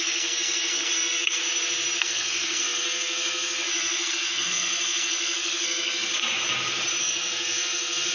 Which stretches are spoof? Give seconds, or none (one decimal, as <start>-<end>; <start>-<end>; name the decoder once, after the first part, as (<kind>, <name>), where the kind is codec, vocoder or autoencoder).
0.0-1.4 (codec, SNAC); 2.0-6.1; 7.0-8.1